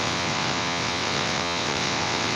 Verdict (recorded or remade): remade